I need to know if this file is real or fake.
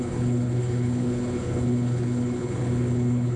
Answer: fake